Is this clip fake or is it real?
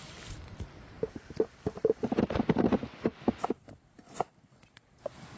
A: real